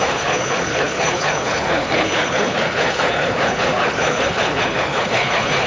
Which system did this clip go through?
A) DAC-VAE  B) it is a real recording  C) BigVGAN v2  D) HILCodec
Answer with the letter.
D